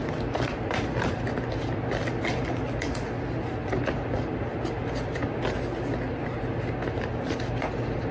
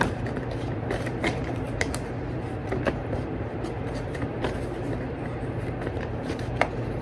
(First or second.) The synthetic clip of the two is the second